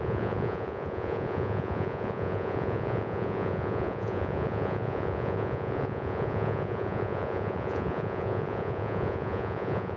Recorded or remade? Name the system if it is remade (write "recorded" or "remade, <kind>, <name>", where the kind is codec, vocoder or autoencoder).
remade, vocoder, Vocos